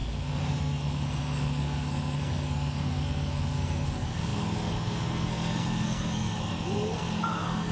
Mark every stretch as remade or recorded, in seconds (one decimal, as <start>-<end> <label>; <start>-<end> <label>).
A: 0.0-7.7 remade